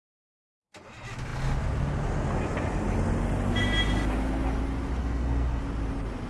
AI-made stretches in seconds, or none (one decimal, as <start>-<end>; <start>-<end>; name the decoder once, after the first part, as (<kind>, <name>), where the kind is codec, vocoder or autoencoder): 5.0-5.6 (codec, SNAC)